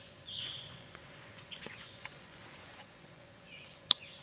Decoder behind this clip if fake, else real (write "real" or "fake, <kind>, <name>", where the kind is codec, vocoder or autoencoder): fake, vocoder, Vocos